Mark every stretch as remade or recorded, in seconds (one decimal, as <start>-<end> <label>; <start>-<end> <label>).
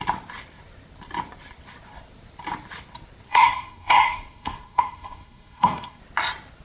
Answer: 0.0-3.3 recorded; 3.3-6.0 remade; 6.0-6.6 recorded